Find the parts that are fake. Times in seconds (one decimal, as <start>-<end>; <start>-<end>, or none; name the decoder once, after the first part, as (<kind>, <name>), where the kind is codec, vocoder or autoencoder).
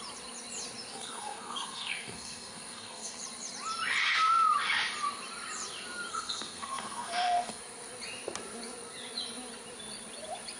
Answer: 0.9-3.2 (codec, SNAC); 6.1-7.6